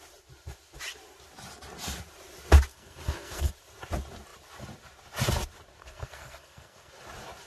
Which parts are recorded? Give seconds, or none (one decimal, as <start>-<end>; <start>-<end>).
0.0-2.7; 3.5-5.8; 6.9-7.5